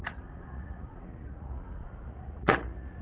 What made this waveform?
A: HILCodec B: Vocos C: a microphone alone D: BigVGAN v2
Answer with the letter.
B